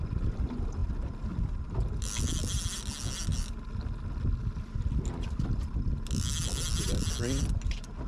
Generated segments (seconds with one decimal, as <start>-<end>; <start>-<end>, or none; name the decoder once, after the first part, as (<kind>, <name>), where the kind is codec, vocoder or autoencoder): none